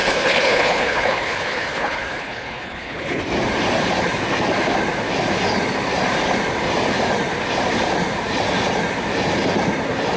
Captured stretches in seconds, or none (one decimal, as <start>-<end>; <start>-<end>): 3.2-10.2